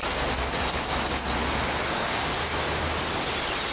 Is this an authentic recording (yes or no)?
yes